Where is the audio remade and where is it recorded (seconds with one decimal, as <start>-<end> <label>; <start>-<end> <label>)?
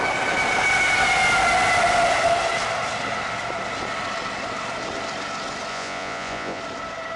0.0-5.7 recorded; 5.7-6.6 remade; 6.6-7.2 recorded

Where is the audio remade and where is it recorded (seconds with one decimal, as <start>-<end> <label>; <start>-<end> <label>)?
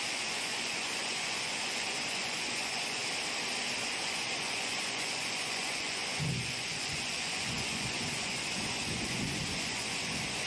0.0-3.0 remade; 3.0-3.8 recorded; 3.8-10.5 remade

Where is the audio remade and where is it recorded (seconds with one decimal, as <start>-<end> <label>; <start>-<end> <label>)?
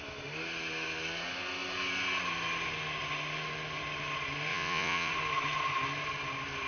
0.0-4.5 recorded; 4.5-5.1 remade; 5.1-6.7 recorded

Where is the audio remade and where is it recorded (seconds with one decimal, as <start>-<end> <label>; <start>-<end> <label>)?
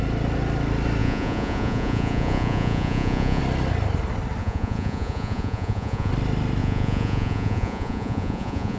0.0-1.0 recorded; 1.0-3.4 remade; 3.4-4.4 recorded; 4.4-6.1 remade; 6.1-6.6 recorded; 6.6-8.8 remade